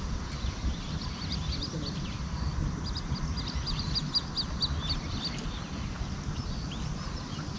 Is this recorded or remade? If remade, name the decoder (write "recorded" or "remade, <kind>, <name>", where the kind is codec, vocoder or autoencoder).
recorded